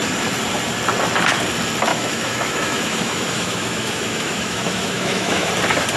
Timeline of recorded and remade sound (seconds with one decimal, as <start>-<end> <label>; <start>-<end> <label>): 0.0-1.9 recorded; 1.9-5.5 remade; 5.5-6.0 recorded